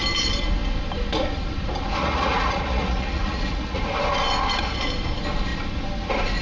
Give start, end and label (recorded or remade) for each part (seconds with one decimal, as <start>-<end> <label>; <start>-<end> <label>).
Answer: 0.0-2.0 recorded; 2.0-3.8 remade; 3.8-6.4 recorded

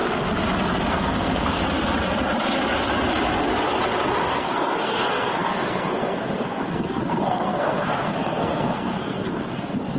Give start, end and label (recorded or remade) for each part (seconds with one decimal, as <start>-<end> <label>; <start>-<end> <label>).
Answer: 0.0-0.9 recorded; 0.9-1.6 remade; 1.6-4.2 recorded; 4.2-10.0 remade

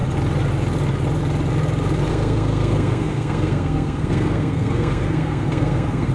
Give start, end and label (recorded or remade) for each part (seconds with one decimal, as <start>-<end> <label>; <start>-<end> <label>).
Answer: 0.0-2.1 recorded; 2.1-6.1 remade

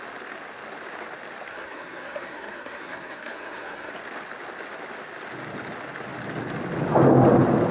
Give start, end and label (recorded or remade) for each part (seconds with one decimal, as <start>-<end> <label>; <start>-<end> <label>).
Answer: 0.0-1.5 recorded; 1.5-3.9 remade; 3.9-7.7 recorded

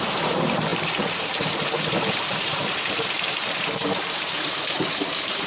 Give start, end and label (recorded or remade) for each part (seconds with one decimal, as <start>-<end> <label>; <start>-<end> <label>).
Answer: 0.0-5.5 remade

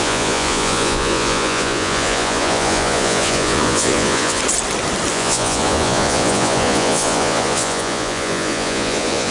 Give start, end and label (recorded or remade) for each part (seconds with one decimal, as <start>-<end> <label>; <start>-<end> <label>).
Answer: 0.0-4.4 remade; 4.4-5.1 recorded; 5.1-9.3 remade